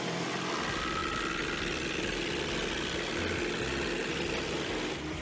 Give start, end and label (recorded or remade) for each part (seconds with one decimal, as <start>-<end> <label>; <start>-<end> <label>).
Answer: 0.0-1.0 remade; 1.0-4.1 recorded; 4.1-5.2 remade